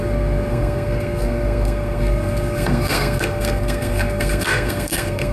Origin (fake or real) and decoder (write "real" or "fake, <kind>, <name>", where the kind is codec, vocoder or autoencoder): fake, codec, SNAC